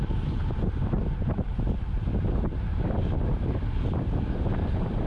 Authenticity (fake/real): real